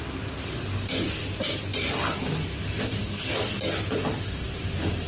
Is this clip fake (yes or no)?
no